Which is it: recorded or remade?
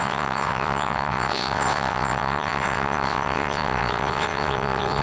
remade